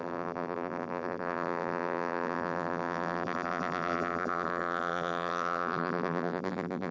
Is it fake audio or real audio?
fake